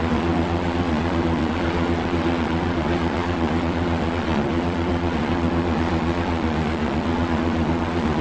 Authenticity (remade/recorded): remade